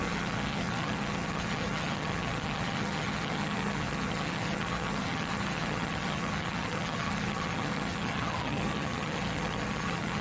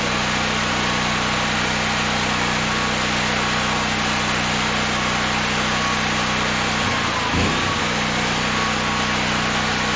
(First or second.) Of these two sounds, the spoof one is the first